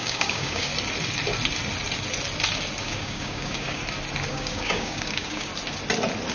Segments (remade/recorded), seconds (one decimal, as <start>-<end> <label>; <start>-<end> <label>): 0.0-0.7 remade; 0.7-2.8 recorded; 2.8-3.8 remade; 3.8-4.3 recorded; 4.3-5.5 remade; 5.5-6.3 recorded